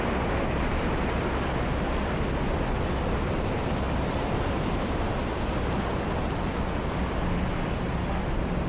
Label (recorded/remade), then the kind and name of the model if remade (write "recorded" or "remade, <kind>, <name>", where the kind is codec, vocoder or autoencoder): recorded